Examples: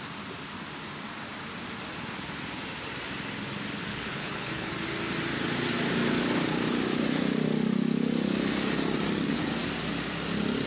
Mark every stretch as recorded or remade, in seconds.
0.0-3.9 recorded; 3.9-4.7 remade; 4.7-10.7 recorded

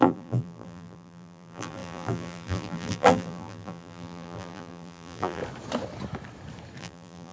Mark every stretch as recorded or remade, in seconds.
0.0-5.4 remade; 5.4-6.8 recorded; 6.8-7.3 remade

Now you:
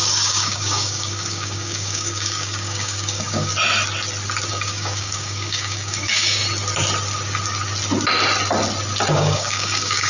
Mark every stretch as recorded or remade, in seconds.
0.0-3.5 remade; 3.5-4.5 recorded; 4.5-6.4 remade; 6.4-9.1 recorded; 9.1-10.1 remade